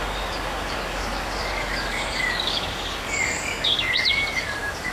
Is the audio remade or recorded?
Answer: remade